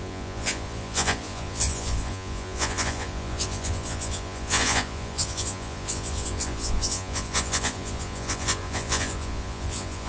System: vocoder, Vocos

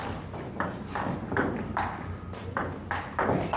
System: none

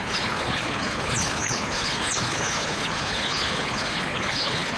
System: codec, HILCodec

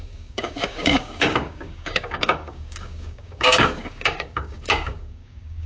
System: codec, DAC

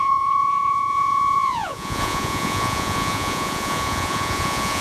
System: vocoder, Vocos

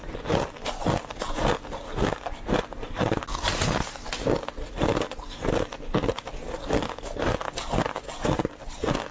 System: none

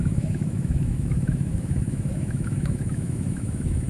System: autoencoder, DAC-VAE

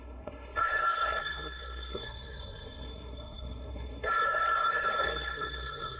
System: codec, SNAC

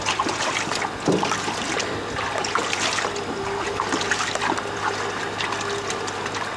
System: none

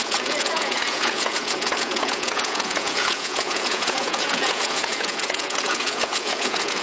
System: vocoder, Vocos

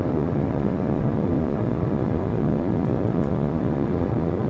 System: vocoder, Vocos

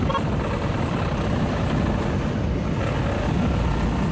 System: none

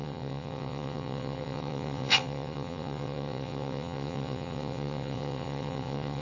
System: vocoder, WaveNeXt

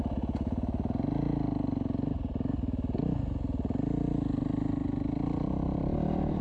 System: none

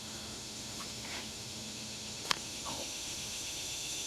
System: autoencoder, DAC-VAE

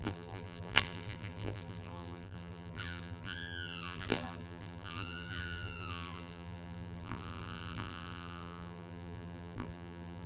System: vocoder, BigVGAN v2